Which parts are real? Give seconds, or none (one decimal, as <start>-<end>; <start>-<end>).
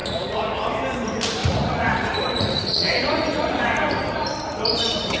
0.5-1.4; 3.6-5.2